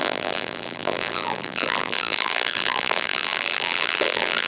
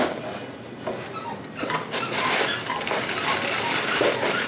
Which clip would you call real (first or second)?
second